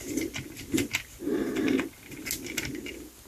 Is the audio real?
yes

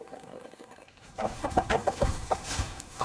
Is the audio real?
no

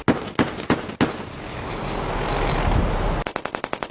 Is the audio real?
yes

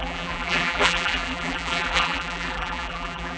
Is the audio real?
no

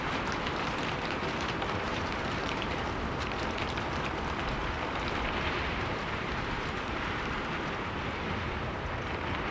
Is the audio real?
no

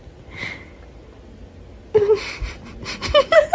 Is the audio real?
yes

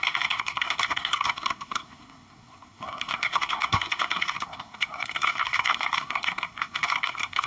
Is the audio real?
no